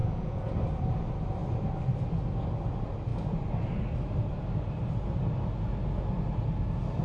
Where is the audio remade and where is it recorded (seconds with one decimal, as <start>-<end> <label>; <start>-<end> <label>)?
0.0-0.5 remade; 0.5-7.0 recorded